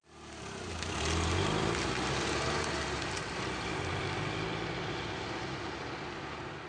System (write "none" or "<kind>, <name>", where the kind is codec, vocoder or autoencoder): none